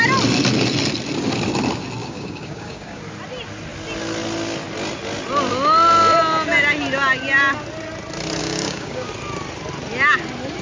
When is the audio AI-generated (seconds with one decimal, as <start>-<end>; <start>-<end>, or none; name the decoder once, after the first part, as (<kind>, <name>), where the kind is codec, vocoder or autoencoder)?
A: 2.0-3.0 (codec, DAC); 8.4-9.1